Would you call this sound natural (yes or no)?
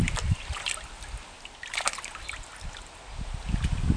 yes